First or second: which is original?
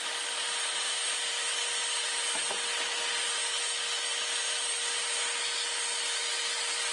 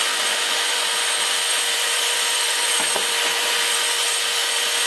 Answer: first